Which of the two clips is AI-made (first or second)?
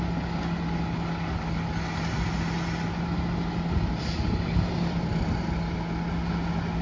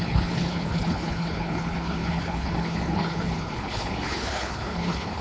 second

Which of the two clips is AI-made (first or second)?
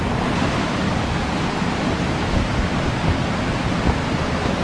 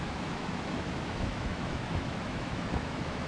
second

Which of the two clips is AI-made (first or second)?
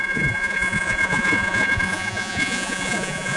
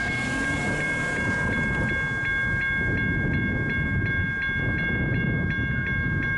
first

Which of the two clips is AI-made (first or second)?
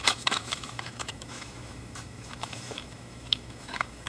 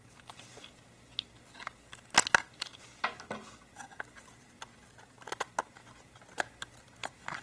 first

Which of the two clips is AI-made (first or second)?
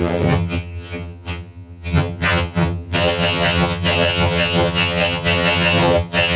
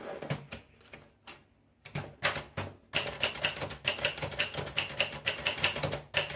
first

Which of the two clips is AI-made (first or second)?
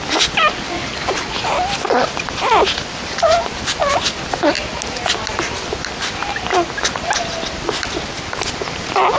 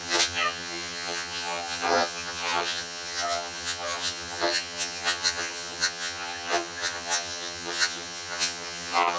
second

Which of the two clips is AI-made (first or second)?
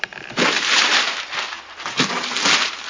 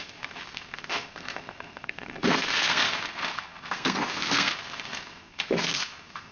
second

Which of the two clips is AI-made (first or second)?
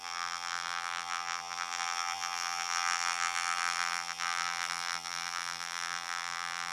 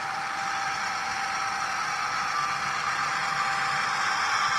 first